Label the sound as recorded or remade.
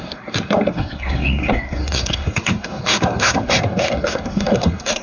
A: remade